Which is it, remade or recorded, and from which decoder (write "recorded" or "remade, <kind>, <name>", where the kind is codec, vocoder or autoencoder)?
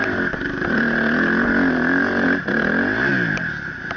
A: recorded